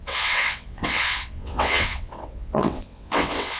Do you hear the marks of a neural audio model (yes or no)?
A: yes